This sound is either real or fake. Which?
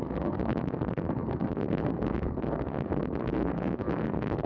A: fake